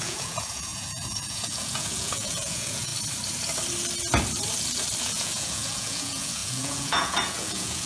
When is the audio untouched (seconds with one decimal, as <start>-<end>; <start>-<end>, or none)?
2.9-5.0